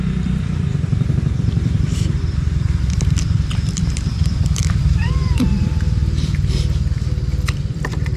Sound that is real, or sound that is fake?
fake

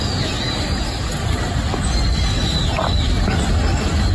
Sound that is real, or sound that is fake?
real